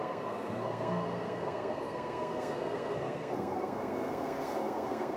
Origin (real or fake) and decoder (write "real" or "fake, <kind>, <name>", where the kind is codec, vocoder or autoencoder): fake, codec, SNAC